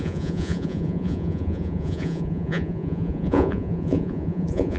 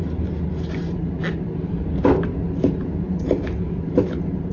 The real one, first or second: second